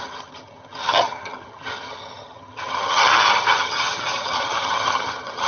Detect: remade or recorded remade